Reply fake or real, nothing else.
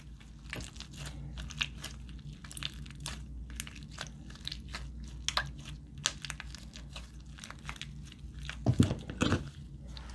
real